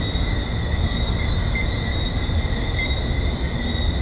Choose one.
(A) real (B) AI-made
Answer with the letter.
A